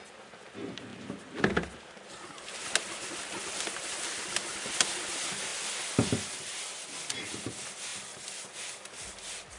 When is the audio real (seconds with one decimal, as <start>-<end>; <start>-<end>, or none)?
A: 0.0-9.6